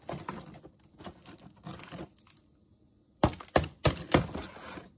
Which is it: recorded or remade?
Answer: recorded